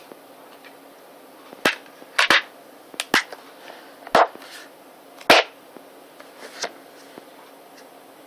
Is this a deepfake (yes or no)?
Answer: no